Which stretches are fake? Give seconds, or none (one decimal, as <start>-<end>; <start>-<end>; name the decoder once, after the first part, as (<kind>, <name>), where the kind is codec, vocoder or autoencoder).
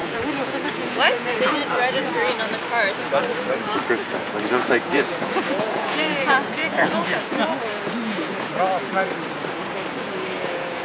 0.0-1.6 (vocoder, Vocos); 4.2-8.9; 10.0-10.8